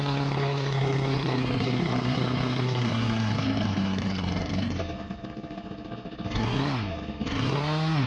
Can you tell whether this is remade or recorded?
remade